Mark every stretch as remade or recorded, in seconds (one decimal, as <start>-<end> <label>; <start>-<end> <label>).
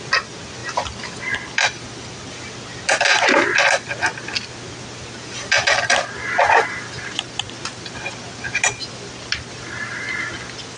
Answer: 0.0-10.8 recorded